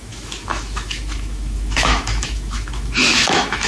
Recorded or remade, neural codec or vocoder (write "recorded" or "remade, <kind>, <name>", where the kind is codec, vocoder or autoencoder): remade, autoencoder, DAC-VAE